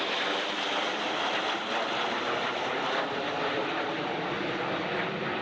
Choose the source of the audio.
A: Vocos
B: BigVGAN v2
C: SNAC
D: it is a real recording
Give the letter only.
B